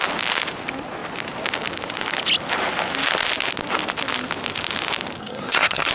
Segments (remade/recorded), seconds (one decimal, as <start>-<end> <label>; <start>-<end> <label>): 0.0-5.2 recorded; 5.2-5.9 remade